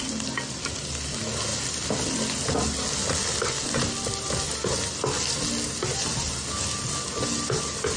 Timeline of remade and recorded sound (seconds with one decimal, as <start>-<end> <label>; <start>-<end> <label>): 0.0-8.0 recorded